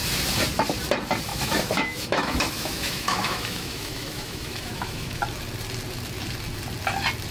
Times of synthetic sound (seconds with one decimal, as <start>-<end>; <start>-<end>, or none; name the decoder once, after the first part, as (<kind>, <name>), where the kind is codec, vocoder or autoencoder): 1.3-5.2 (autoencoder, DAC-VAE)